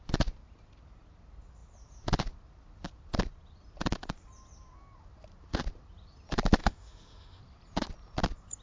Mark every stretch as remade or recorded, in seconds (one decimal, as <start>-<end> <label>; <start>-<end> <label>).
0.0-6.6 recorded; 6.6-7.4 remade; 7.4-8.6 recorded